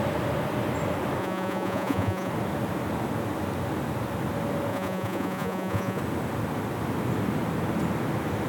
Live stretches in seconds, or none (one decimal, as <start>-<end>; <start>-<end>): 0.0-1.2; 2.3-4.7; 6.0-8.5